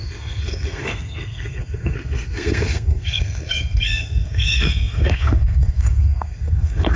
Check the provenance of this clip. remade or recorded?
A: remade